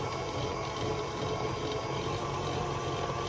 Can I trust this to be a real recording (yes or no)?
yes